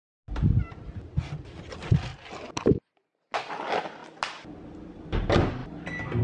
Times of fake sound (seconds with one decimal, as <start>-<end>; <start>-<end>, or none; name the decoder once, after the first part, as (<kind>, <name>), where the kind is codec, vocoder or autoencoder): none